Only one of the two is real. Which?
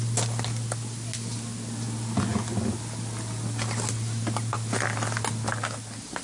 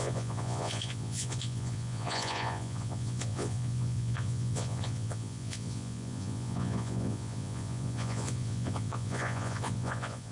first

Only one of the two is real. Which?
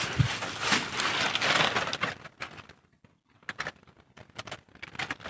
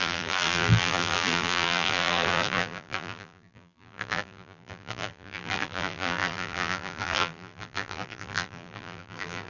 first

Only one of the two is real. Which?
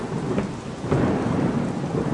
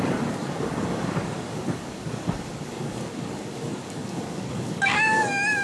first